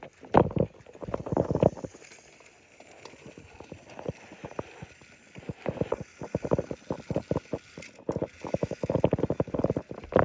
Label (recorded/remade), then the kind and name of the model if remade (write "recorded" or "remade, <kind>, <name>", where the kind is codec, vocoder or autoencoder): recorded